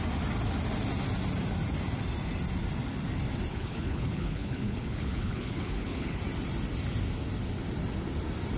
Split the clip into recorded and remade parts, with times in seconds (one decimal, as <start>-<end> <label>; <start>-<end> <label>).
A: 0.0-3.5 recorded; 3.5-6.2 remade; 6.2-8.6 recorded